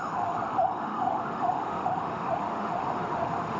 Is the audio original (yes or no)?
no